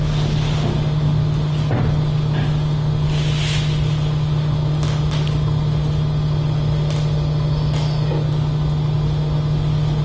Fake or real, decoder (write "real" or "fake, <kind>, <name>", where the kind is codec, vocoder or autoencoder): real